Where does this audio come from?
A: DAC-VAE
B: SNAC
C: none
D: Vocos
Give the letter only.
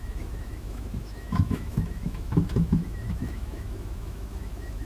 A